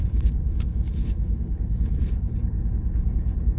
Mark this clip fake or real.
fake